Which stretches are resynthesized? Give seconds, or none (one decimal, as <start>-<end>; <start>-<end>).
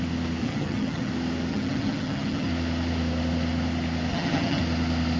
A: 0.4-1.1; 1.5-2.5; 4.1-4.6